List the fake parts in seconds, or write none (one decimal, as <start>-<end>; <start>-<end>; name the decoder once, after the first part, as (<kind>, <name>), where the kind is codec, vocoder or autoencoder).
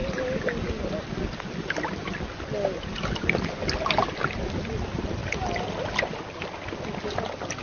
none